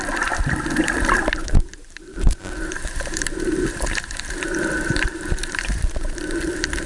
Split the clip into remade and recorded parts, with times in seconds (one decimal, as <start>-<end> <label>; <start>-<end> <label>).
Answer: 0.0-1.4 recorded; 1.4-5.4 remade; 5.4-6.9 recorded